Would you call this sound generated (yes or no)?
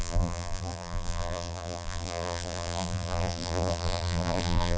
yes